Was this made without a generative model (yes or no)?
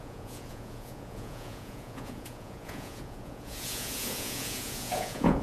no